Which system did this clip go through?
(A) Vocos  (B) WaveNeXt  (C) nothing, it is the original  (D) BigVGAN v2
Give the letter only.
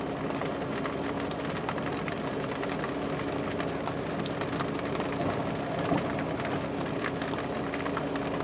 C